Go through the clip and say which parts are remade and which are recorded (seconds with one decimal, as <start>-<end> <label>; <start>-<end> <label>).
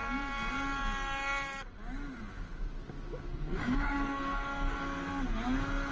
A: 0.0-3.3 recorded; 3.3-4.8 remade; 4.8-5.9 recorded